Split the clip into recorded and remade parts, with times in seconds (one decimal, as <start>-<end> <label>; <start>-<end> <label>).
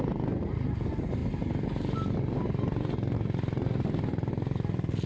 0.0-5.1 recorded